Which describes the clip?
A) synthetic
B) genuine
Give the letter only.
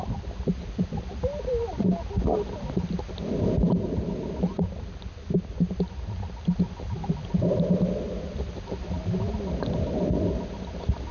B